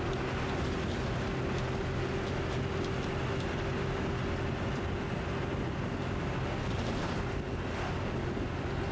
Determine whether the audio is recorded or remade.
recorded